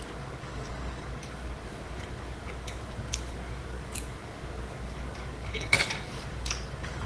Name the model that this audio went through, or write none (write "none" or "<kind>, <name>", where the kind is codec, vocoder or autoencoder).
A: codec, DAC